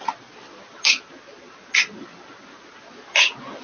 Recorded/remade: recorded